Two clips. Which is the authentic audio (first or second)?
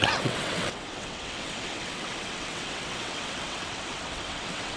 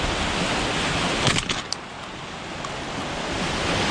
second